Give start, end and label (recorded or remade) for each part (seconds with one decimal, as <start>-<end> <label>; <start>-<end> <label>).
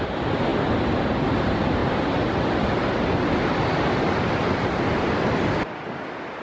0.0-0.5 remade; 0.5-1.4 recorded; 1.4-6.4 remade